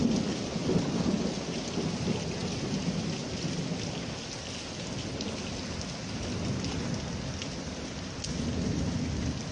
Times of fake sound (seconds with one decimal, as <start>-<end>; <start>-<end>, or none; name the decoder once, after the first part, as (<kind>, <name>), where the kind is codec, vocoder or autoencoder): none